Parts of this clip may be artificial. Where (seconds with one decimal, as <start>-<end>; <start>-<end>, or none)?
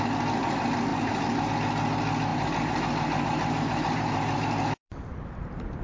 0.9-1.5; 2.3-5.8